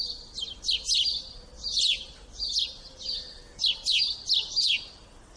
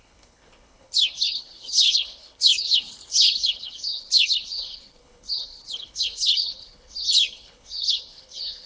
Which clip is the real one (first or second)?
first